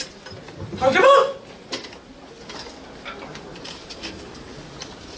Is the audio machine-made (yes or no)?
no